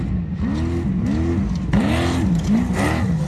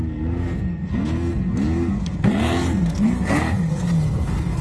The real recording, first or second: first